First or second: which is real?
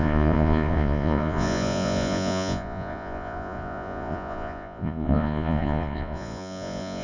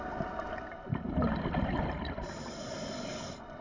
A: second